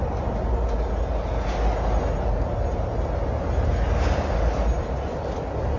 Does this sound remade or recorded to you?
recorded